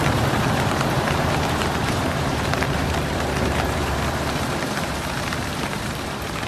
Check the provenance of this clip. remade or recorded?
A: remade